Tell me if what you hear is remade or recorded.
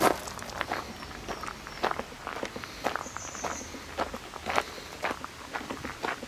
recorded